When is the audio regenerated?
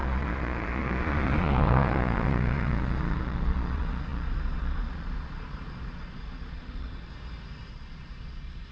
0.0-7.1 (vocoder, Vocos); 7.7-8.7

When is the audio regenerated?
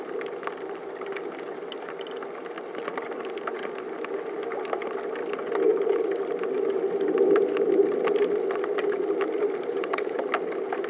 9.7-10.2 (vocoder, WaveNeXt)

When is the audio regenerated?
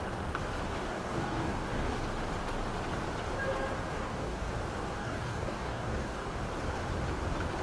0.9-2.0 (codec, DAC); 3.9-4.5; 5.0-6.4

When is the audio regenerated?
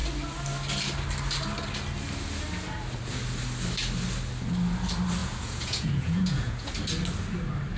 5.2-6.7 (vocoder, Vocos)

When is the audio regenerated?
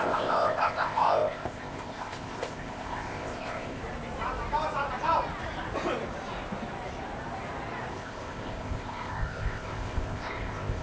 0.0-3.8 (codec, ZipCodec); 7.9-10.8